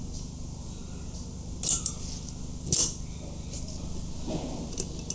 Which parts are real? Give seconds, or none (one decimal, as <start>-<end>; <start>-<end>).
0.0-5.1